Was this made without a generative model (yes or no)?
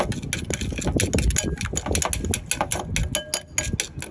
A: yes